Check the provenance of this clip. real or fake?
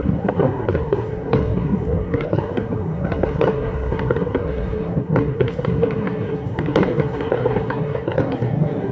fake